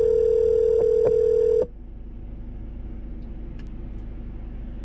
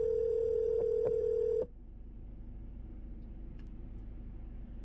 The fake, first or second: second